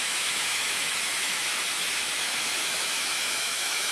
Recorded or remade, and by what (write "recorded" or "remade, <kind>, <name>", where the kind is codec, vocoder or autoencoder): remade, autoencoder, DAC-VAE